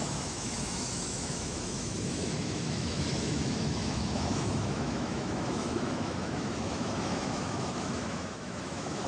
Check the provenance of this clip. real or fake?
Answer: fake